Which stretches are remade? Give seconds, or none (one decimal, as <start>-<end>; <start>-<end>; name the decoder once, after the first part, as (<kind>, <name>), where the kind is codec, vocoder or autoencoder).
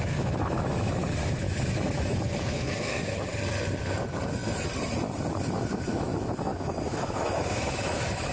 0.0-3.3 (autoencoder, DAC-VAE); 5.4-8.3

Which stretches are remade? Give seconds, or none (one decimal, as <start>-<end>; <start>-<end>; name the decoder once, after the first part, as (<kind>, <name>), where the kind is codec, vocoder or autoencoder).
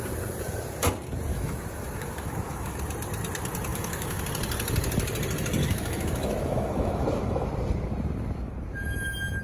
1.3-2.8 (autoencoder, DAC-VAE); 3.7-4.2; 5.6-7.5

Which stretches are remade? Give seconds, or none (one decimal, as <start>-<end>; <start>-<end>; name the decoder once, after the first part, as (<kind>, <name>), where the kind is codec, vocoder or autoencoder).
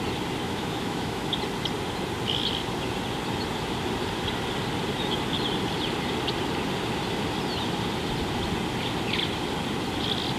0.4-1.3 (autoencoder, DAC-VAE)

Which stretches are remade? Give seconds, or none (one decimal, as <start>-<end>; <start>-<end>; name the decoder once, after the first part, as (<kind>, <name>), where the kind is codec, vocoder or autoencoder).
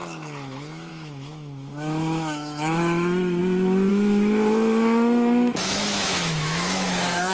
0.9-3.4 (autoencoder, DAC-VAE); 3.9-7.3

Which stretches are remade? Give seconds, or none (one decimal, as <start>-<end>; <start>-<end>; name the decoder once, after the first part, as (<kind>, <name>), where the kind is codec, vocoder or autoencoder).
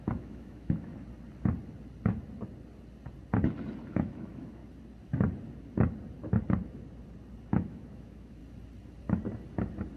0.0-0.9 (autoencoder, DAC-VAE); 3.9-4.6; 7.5-8.4